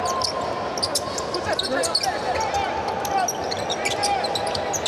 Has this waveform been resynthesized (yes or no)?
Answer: no